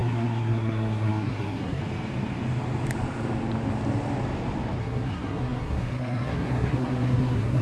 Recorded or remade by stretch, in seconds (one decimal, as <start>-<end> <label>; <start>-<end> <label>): 0.0-1.8 remade; 1.8-4.8 recorded; 4.8-7.6 remade